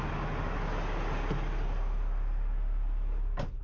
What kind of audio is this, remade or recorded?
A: recorded